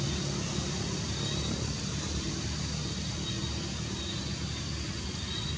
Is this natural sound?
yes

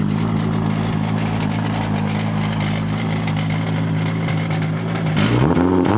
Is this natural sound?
yes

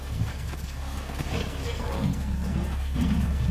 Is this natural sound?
no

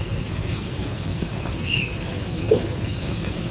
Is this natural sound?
no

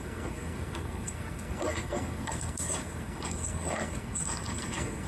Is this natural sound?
no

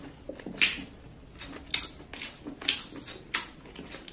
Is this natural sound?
yes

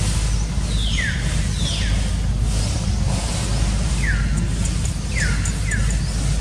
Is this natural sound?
yes